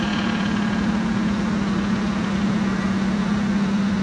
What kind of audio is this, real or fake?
real